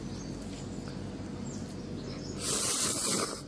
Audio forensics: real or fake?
real